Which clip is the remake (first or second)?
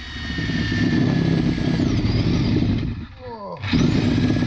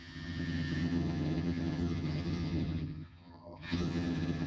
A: second